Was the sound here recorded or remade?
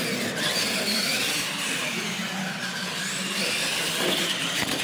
recorded